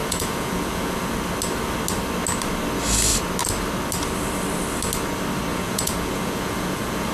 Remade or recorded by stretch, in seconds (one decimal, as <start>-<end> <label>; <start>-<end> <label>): 0.0-1.1 remade; 1.1-5.5 recorded; 5.5-7.1 remade